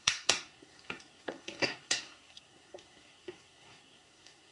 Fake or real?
fake